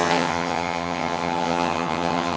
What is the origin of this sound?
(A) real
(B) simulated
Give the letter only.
B